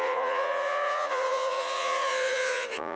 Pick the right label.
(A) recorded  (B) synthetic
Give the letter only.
B